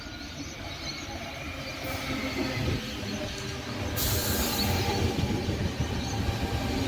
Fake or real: real